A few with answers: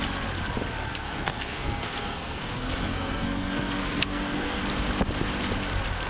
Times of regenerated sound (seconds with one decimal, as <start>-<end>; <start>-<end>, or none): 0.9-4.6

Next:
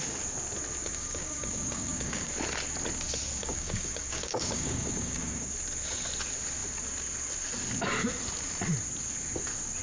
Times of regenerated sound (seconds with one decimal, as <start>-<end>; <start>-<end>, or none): 0.8-2.3; 3.4-5.5

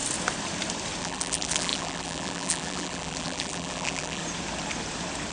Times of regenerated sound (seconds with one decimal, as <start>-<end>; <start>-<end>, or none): 1.0-4.2

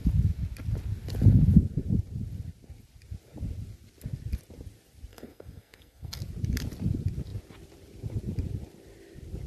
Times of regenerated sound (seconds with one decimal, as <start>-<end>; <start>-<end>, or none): 5.1-6.2

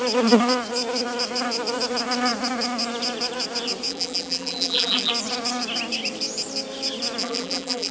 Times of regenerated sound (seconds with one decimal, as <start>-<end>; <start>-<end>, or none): 3.9-5.1; 7.2-7.9

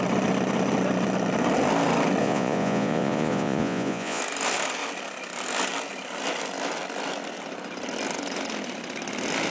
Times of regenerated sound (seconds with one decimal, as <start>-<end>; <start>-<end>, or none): 2.2-4.2

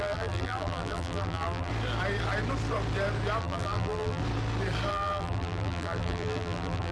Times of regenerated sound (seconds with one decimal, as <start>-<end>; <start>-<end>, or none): 0.0-1.7; 3.4-4.2; 4.9-6.9